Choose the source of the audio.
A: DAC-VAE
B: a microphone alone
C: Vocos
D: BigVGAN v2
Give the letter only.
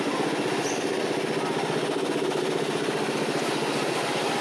B